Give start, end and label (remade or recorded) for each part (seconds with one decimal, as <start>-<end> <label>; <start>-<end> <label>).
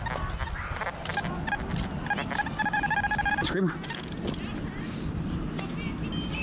0.0-1.1 recorded; 1.1-4.6 remade; 4.6-6.4 recorded